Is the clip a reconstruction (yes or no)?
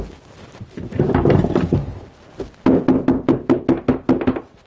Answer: no